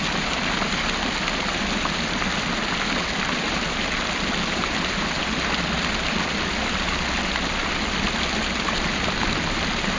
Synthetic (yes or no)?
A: no